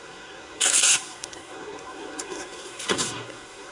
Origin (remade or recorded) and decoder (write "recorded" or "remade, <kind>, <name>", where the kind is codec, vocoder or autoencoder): remade, codec, SNAC